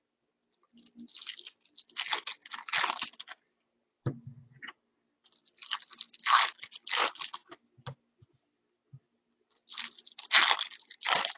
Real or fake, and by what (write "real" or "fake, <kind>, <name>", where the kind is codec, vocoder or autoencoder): real